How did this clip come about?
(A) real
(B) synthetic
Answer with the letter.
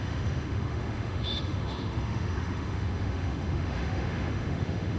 B